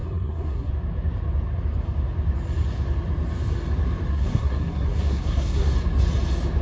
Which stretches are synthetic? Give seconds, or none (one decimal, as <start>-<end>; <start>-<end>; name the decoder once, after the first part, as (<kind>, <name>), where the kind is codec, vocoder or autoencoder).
0.0-0.7 (codec, SNAC); 4.1-5.7